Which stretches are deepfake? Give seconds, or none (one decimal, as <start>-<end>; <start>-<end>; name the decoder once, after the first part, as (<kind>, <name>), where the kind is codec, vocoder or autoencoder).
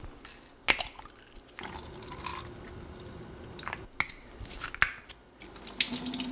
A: none